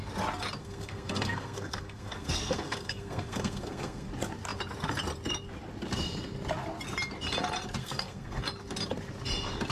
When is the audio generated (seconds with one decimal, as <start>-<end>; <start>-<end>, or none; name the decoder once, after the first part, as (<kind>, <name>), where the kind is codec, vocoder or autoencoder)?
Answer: 0.6-4.1 (codec, SNAC); 7.8-8.4